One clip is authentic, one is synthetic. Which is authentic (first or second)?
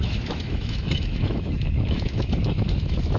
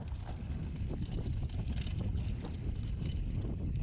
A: second